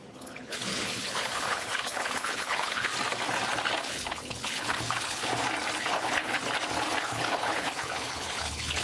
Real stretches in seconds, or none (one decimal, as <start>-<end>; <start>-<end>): 2.9-3.8; 5.3-5.9; 6.4-7.0